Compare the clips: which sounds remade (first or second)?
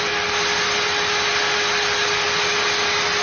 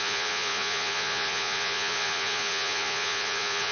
second